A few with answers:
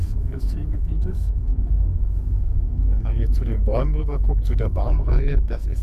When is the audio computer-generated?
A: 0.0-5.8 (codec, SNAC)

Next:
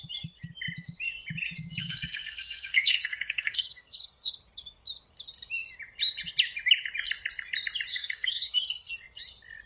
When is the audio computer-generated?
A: 1.8-4.3 (codec, SNAC); 7.9-8.9

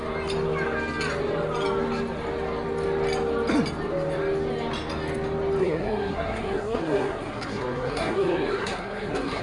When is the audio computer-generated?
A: 5.6-9.4 (codec, SNAC)